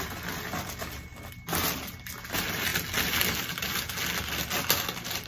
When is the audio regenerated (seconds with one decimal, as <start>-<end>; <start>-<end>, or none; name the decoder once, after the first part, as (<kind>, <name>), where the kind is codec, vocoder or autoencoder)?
none